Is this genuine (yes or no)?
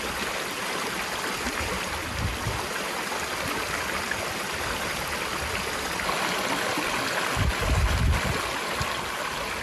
yes